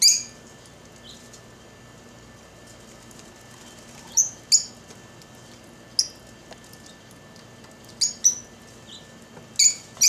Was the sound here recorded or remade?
recorded